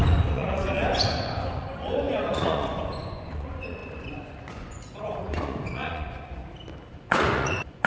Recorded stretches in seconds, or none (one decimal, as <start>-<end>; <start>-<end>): 6.4-6.9